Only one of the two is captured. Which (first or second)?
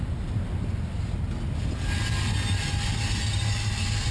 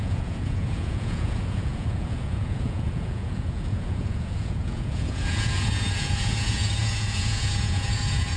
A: first